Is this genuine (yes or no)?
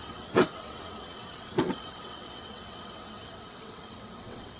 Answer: no